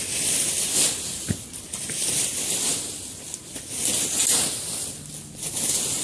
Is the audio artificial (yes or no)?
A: no